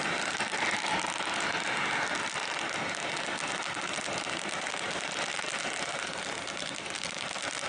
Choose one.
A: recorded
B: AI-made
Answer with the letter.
A